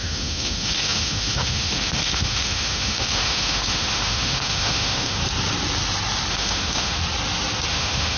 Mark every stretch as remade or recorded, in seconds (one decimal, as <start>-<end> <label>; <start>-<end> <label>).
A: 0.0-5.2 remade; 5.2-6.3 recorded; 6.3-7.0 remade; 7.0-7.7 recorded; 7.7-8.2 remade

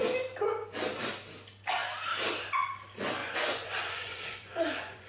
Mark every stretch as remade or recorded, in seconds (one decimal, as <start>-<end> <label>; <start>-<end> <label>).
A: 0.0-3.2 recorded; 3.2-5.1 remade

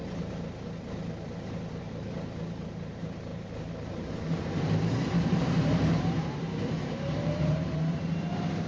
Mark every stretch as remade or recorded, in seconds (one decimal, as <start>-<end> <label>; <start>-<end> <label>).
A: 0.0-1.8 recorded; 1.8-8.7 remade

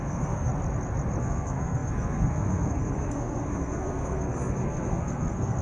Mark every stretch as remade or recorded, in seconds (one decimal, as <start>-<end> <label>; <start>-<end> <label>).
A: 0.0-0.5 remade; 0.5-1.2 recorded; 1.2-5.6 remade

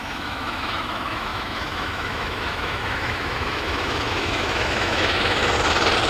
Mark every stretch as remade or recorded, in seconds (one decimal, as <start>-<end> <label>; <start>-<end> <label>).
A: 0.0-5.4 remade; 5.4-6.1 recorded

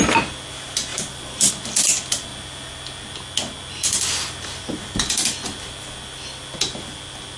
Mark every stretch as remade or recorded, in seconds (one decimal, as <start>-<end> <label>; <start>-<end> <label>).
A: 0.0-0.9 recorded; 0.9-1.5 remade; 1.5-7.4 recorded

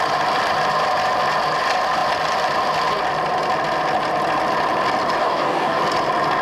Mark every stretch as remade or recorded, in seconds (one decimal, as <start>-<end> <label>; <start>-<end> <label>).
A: 0.0-5.2 recorded; 5.2-5.8 remade; 5.8-6.4 recorded